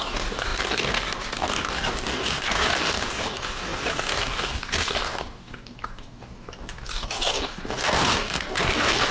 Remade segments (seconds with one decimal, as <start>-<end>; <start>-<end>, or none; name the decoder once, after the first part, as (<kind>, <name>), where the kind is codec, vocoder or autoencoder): 0.0-9.1 (codec, DAC)